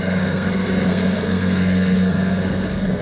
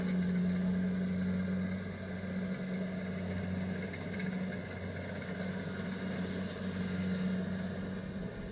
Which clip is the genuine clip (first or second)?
second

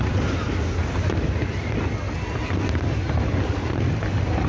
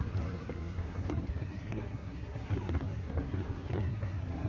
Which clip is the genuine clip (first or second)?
first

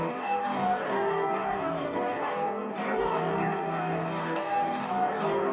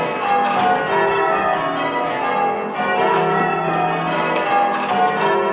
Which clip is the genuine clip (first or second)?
second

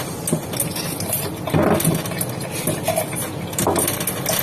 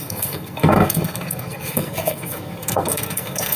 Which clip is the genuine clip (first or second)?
first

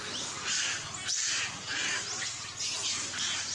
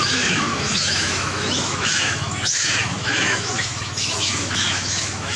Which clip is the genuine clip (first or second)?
first